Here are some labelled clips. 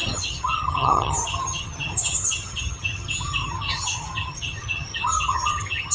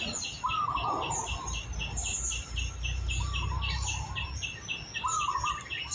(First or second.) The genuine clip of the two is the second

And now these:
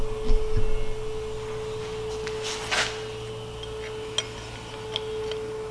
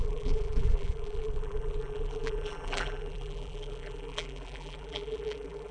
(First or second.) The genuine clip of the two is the first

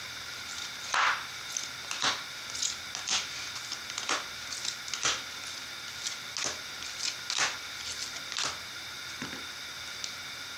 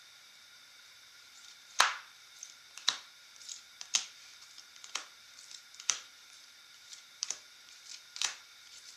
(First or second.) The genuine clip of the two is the first